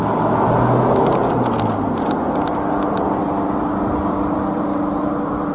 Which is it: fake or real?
real